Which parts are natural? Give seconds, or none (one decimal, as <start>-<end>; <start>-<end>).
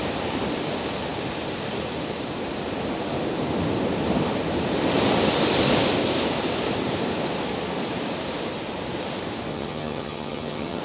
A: 0.0-9.5